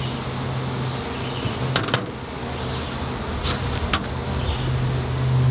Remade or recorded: recorded